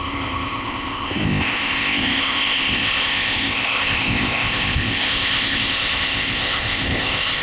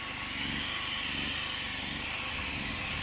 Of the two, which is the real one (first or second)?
second